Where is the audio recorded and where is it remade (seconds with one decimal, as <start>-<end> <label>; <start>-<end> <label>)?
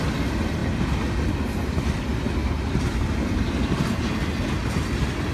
0.0-5.3 recorded